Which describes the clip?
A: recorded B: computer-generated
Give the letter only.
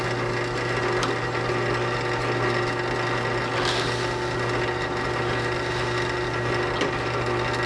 A